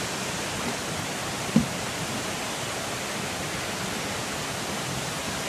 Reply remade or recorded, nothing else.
recorded